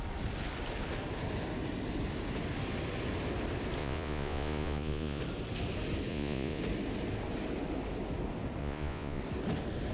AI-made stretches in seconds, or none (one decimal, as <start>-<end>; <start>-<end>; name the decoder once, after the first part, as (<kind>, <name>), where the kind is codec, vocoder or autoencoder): 3.8-5.2 (vocoder, Vocos); 6.1-6.6; 8.6-9.2